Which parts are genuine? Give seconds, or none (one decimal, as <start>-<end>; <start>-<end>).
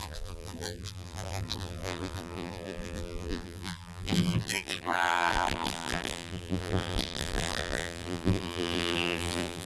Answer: none